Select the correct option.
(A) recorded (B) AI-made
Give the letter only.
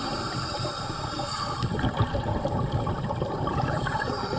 B